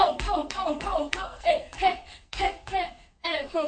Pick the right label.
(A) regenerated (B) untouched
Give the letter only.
A